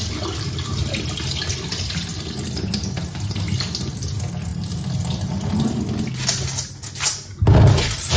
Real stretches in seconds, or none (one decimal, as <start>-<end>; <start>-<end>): 0.0-8.2